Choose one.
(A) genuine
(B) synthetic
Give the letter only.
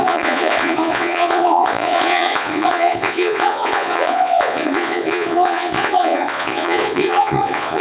B